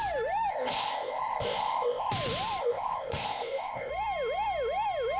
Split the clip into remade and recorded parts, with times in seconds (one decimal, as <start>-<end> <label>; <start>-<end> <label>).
0.0-0.5 recorded; 0.5-2.1 remade; 2.1-2.6 recorded; 2.6-3.9 remade; 3.9-5.2 recorded